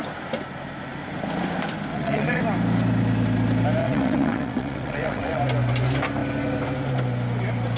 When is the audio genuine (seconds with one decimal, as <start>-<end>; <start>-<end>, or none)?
0.0-1.9; 2.4-3.8; 5.4-7.8